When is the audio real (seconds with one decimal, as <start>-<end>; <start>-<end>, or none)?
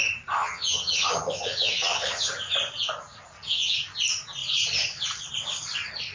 0.0-0.4; 2.3-6.1